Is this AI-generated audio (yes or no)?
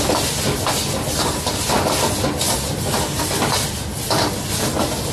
no